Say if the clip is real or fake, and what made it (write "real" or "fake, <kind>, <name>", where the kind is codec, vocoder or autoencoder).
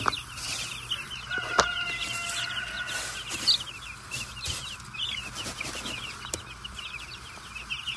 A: real